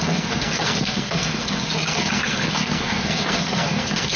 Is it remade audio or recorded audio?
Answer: remade